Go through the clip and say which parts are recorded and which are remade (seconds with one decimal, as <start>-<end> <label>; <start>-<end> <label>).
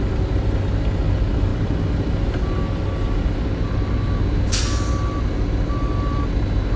0.0-6.8 recorded